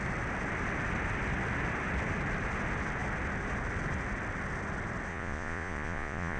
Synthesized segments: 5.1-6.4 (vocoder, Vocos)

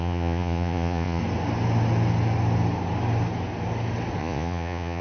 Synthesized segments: 0.0-1.2 (vocoder, Vocos); 4.2-5.0

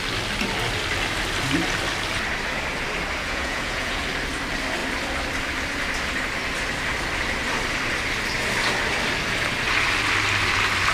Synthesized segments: 3.2-4.0 (vocoder, Vocos)

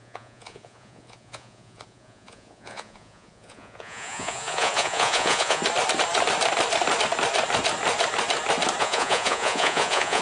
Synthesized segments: 0.0-5.6 (vocoder, Vocos); 8.8-10.2